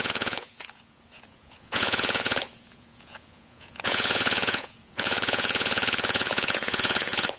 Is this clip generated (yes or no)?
yes